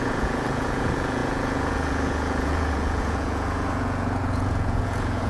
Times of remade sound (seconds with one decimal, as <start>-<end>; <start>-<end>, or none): 0.0-5.3